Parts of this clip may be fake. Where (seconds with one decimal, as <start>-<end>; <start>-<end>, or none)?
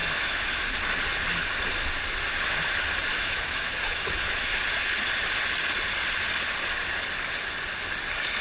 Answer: 0.0-0.7; 3.1-4.6